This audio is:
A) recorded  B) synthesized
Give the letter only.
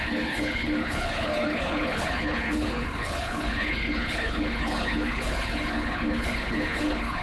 B